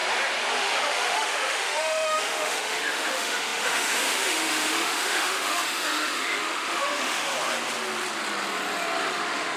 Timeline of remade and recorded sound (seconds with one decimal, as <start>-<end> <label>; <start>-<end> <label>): 0.0-0.6 recorded; 0.6-7.3 remade; 7.3-9.1 recorded; 9.1-9.6 remade